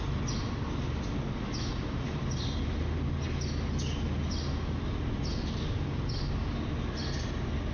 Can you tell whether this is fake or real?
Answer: real